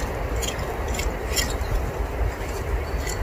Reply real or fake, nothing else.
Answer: real